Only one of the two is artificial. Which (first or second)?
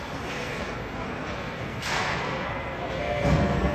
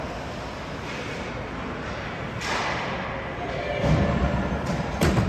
first